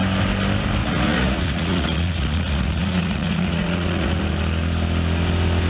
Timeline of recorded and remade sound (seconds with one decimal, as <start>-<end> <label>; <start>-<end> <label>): 0.0-0.8 recorded; 0.8-4.2 remade; 4.2-5.7 recorded